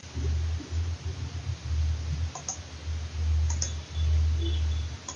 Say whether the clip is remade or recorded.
recorded